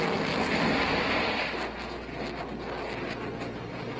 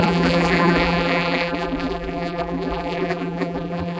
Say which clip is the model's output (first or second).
second